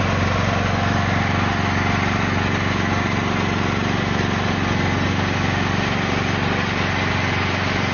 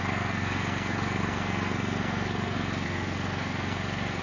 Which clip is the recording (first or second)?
first